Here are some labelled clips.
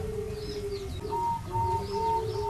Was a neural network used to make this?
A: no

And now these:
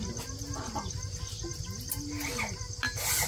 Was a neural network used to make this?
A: no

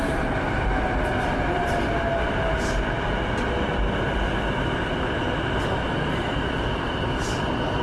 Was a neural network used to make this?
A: no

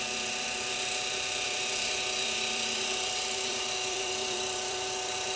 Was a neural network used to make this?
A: yes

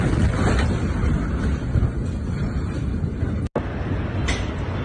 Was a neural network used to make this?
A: no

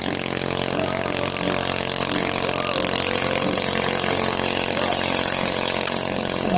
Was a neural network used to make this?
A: yes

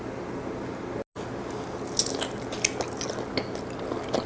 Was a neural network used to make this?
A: no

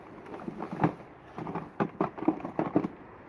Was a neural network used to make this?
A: no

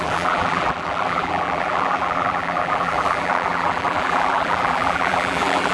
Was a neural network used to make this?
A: yes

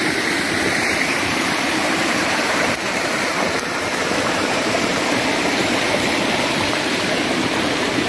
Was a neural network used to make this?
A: yes